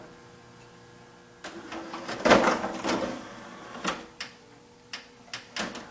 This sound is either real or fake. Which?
real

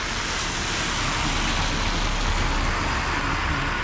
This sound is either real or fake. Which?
real